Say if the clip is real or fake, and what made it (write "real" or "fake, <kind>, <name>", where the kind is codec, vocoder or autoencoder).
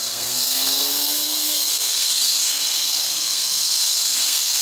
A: fake, codec, SNAC